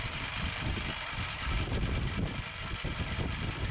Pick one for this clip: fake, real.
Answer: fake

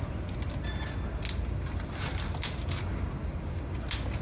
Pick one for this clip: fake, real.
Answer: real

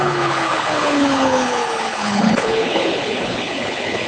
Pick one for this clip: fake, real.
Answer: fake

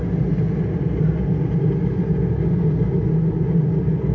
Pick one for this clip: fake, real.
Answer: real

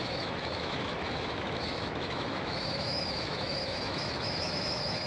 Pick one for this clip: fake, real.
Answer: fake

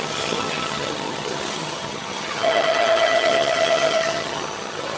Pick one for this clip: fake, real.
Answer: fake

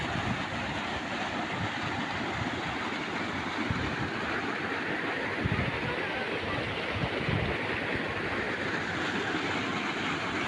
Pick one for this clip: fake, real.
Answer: real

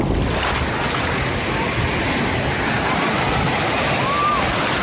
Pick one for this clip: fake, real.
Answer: real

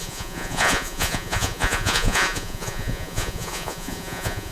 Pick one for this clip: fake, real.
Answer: fake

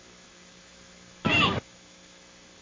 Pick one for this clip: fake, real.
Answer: fake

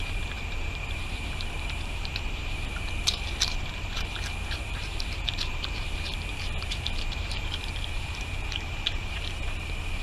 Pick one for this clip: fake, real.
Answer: fake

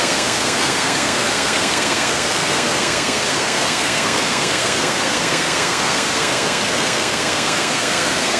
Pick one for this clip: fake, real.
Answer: fake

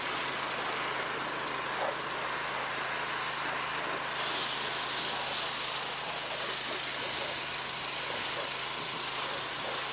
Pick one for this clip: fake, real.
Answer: real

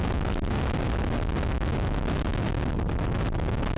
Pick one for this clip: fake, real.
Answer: real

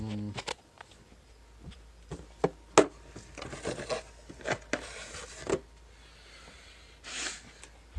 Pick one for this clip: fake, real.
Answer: real